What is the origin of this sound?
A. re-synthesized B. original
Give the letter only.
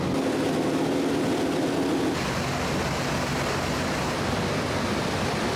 B